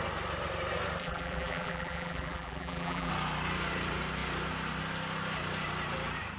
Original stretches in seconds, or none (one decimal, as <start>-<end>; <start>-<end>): 0.0-1.0; 3.1-6.4